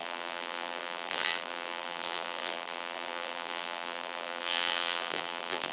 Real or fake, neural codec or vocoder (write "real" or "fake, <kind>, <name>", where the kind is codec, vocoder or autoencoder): fake, vocoder, BigVGAN v2